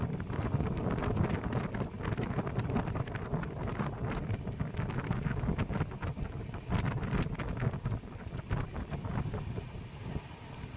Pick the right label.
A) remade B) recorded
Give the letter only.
B